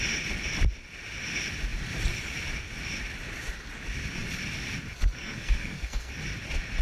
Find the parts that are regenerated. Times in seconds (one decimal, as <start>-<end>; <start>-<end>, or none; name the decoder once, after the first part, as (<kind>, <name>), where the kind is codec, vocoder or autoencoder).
5.2-6.1 (codec, SNAC)